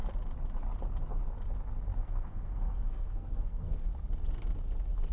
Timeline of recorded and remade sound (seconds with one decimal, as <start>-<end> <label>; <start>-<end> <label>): 0.0-1.9 recorded; 1.9-3.9 remade; 3.9-5.1 recorded